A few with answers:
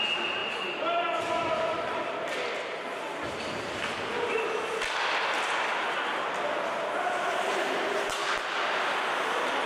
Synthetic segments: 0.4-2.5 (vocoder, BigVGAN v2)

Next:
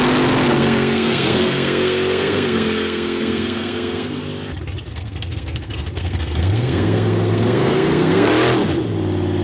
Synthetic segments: 0.5-4.2 (codec, SNAC); 4.9-8.3

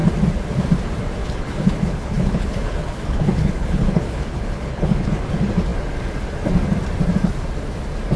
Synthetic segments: 1.2-5.3 (codec, HILCodec)

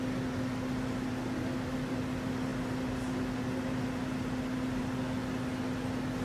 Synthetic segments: none

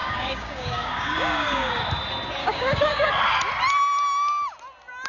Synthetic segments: 0.0-1.7 (codec, DAC); 2.4-3.1

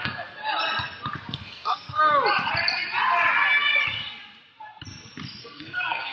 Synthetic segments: 0.0-0.4 (codec, SNAC); 1.3-2.1; 5.4-6.1